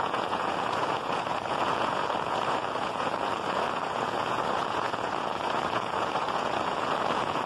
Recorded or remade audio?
remade